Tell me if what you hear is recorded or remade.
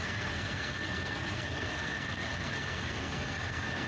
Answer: remade